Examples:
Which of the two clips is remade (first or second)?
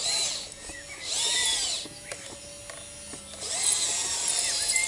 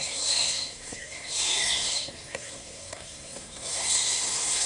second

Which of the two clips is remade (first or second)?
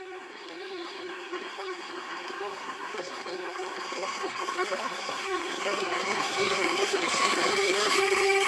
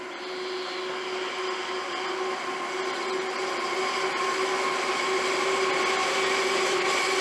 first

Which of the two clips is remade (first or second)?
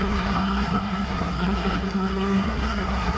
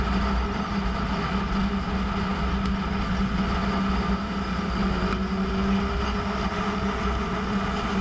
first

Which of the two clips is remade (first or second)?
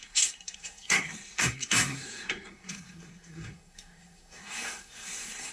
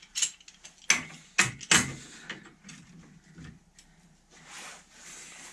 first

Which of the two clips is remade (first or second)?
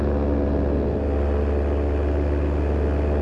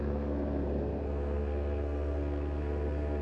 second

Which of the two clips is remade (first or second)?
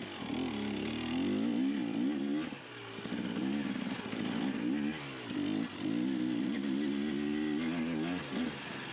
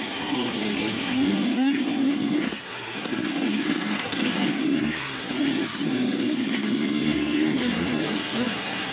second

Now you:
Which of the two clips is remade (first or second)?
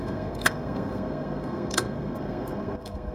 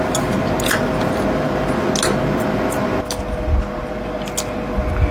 first